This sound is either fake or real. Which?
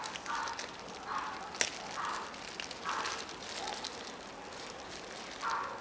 real